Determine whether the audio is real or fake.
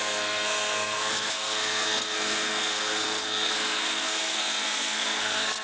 fake